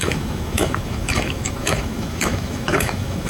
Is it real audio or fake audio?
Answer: fake